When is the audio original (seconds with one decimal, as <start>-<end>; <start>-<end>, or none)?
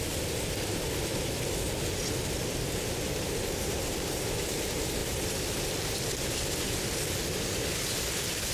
0.0-8.5